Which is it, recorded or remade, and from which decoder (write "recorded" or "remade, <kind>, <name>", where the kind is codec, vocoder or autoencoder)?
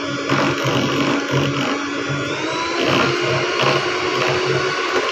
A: recorded